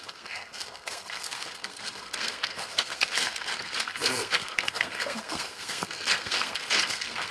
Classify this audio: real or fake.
fake